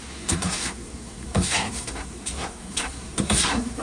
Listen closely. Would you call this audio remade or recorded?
remade